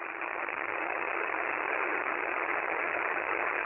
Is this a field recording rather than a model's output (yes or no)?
no